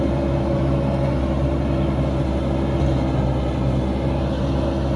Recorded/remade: recorded